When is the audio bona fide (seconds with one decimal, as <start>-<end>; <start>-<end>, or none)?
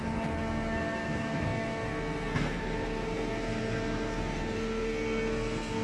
none